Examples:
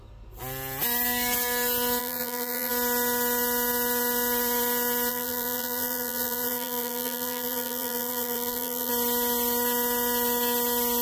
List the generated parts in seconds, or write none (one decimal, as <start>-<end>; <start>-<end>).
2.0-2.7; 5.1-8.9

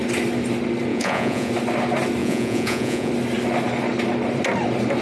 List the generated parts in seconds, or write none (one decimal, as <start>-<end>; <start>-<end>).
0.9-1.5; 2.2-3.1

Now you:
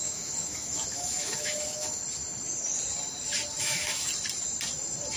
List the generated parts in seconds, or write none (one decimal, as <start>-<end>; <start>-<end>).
0.0-2.0; 3.6-4.1

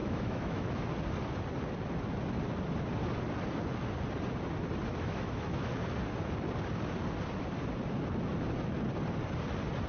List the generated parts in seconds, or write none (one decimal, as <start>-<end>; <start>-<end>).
0.0-0.8; 4.9-5.7

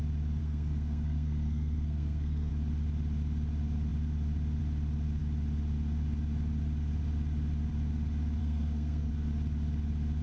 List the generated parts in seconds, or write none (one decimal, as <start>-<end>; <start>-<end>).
0.4-2.5; 8.4-9.1

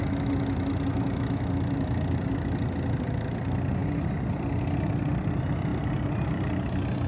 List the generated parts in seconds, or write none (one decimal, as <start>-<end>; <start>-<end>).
none